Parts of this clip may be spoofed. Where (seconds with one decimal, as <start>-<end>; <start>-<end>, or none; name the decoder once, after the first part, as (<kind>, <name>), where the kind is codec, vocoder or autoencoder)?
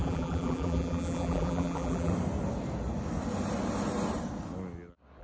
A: 0.0-2.1 (vocoder, BigVGAN v2)